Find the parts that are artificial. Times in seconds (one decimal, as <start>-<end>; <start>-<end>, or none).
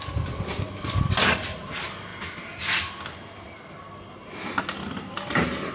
none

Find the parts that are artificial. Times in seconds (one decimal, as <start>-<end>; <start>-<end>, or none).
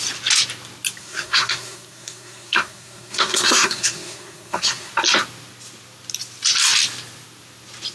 1.0-4.9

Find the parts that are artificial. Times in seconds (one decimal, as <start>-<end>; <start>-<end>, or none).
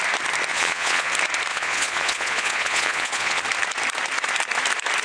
0.5-1.1; 1.5-3.4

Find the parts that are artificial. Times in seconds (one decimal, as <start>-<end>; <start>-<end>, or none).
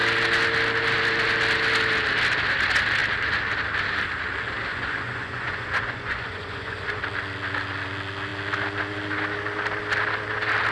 4.7-7.0